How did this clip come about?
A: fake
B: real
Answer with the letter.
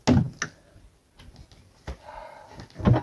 B